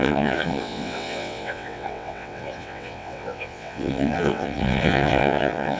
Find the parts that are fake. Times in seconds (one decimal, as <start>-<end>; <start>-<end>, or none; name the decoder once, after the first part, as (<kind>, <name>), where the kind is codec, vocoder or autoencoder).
0.0-5.8 (vocoder, WaveNeXt)